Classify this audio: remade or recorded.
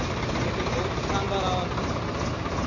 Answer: recorded